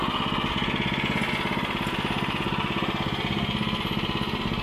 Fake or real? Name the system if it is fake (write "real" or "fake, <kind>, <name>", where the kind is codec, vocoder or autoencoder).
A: real